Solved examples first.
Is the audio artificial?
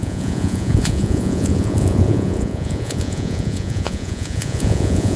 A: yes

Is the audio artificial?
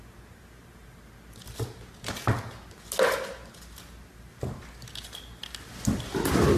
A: no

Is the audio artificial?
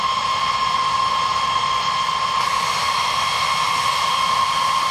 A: yes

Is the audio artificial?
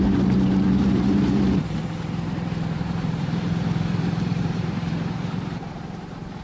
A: yes